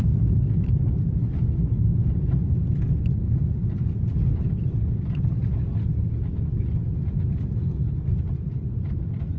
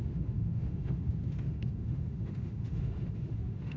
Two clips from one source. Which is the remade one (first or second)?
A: second